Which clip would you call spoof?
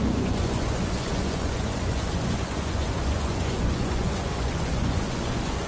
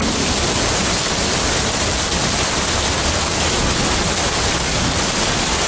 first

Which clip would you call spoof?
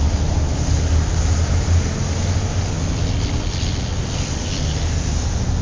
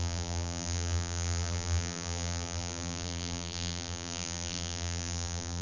second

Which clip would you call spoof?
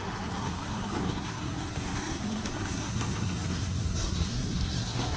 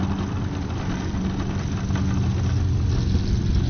first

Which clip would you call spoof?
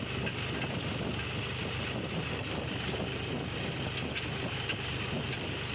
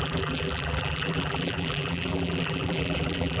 second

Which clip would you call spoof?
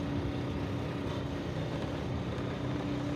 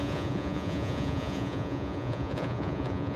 second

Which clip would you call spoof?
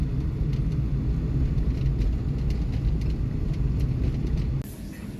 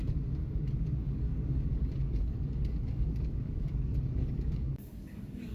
second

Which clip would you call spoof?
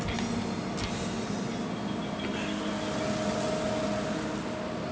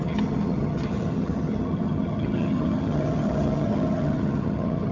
second